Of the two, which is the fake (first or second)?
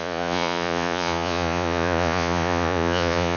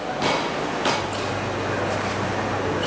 first